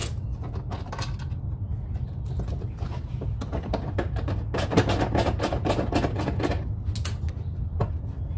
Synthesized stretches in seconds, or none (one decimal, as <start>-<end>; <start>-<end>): none

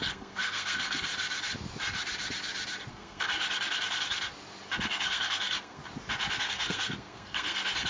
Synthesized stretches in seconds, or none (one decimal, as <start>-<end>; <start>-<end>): 0.0-1.1; 2.9-3.3; 4.8-5.8; 6.4-7.9

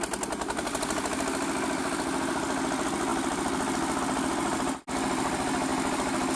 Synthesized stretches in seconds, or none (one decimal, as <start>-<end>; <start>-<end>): none

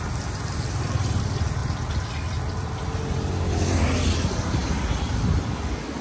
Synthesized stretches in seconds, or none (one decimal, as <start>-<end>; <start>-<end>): none